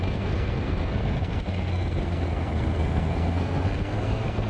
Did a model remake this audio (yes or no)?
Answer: yes